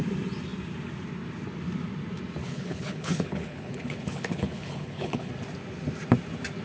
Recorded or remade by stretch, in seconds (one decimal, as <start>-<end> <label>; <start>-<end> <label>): 0.0-2.4 recorded; 2.4-5.3 remade; 5.3-6.6 recorded